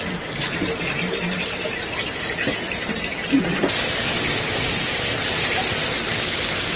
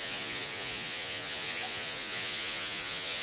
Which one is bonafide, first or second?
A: first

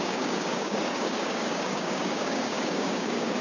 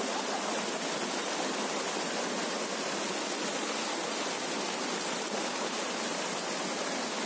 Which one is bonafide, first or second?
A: second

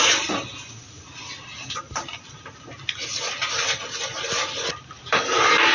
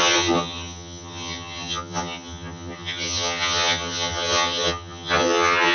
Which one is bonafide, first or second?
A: first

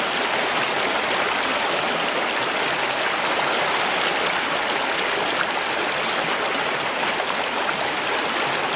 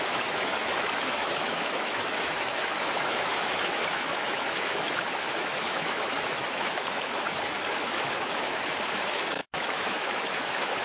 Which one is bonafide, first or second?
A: first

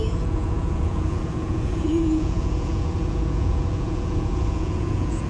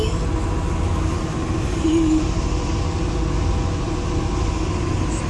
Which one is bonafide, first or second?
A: second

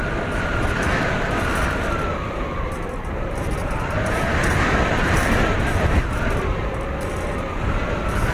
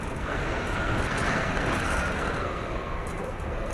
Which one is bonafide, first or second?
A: first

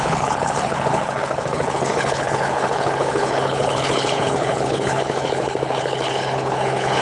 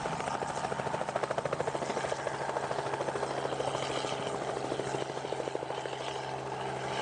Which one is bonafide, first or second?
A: second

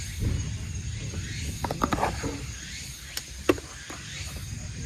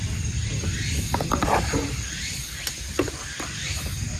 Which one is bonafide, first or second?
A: first